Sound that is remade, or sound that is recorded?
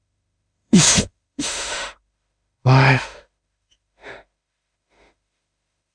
remade